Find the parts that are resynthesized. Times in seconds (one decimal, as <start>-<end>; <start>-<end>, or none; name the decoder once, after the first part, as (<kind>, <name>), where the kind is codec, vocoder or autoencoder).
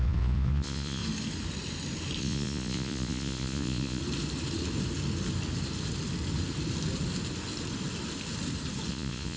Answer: 0.0-1.0 (vocoder, Vocos); 2.2-4.0; 8.9-9.4